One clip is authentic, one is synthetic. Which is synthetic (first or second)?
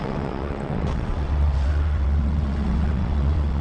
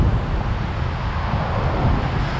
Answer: first